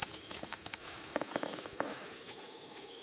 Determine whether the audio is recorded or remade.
remade